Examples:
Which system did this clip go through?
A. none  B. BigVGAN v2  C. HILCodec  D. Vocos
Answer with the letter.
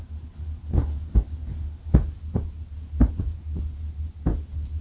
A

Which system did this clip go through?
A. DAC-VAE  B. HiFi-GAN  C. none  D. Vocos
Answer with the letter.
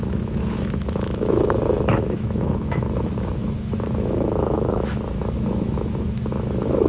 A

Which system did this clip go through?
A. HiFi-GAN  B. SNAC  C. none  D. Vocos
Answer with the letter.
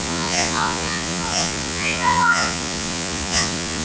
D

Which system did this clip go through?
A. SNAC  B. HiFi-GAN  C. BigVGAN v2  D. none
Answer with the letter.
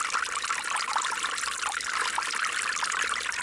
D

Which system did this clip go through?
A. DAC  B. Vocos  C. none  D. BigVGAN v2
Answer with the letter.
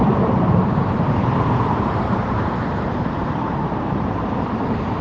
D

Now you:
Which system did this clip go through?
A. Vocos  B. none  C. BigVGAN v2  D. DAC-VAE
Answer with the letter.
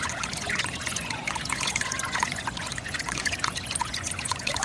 A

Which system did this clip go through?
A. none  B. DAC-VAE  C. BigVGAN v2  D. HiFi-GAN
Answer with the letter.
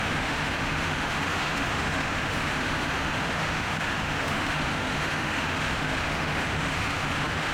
B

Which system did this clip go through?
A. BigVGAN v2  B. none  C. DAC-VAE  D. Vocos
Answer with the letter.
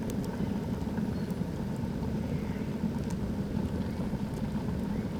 B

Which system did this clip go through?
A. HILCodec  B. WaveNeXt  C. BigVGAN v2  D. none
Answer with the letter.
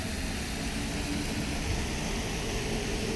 D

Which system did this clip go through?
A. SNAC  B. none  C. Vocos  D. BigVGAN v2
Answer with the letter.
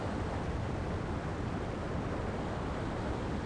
B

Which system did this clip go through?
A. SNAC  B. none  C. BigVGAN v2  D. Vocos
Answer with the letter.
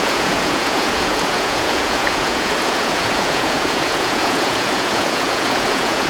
D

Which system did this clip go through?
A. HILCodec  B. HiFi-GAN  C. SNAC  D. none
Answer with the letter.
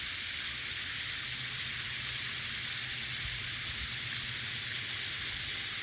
D